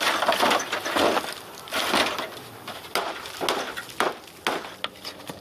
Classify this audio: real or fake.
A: real